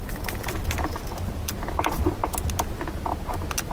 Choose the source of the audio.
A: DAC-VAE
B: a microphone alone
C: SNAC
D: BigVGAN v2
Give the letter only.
B